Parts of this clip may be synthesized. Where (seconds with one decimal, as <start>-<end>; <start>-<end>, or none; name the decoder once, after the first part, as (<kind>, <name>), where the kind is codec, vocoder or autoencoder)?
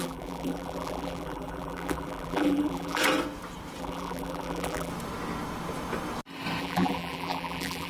0.0-3.0 (vocoder, BigVGAN v2); 3.8-4.9; 6.6-7.9